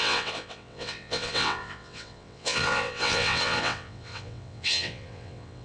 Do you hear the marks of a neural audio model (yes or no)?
yes